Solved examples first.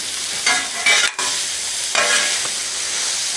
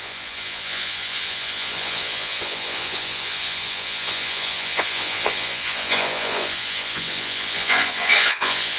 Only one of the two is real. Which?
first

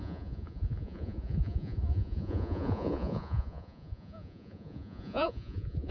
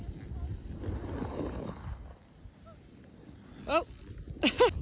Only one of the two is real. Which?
second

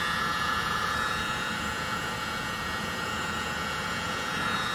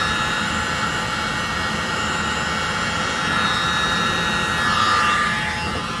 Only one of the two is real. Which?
second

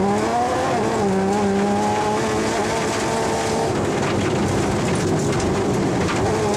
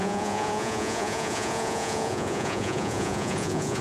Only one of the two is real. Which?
first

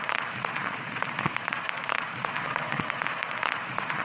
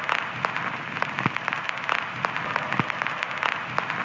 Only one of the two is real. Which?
second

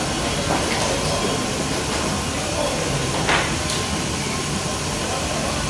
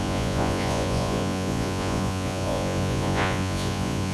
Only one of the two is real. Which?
first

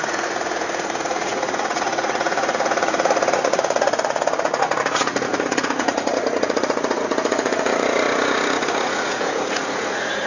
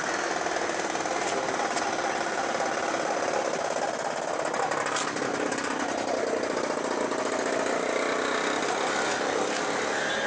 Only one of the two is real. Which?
second